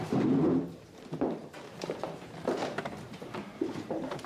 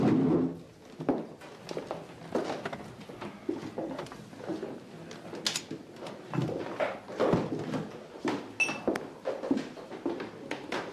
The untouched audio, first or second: second